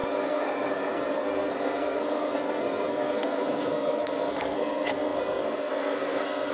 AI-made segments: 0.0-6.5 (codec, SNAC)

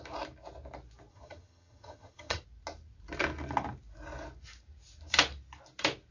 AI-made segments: 1.1-2.4 (vocoder, HiFi-GAN)

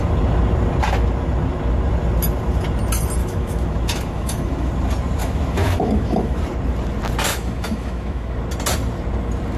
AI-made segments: 3.2-4.7 (autoencoder, DAC-VAE); 5.2-6.4; 7.3-8.3

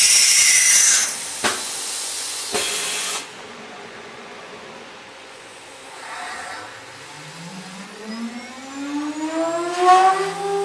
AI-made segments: 1.5-6.0 (vocoder, Vocos); 7.5-8.1

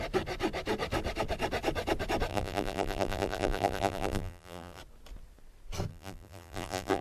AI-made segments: 2.3-4.8 (vocoder, BigVGAN v2); 5.9-7.0

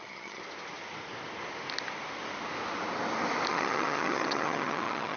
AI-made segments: 0.0-0.4 (vocoder, HiFi-GAN); 3.5-5.2

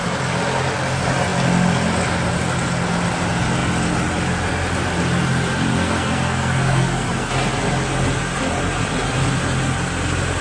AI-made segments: 5.7-7.3 (codec, SNAC)

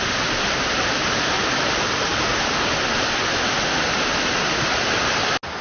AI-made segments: none